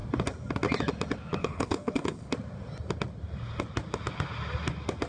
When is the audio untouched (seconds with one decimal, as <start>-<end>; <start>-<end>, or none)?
0.0-1.4; 2.3-5.1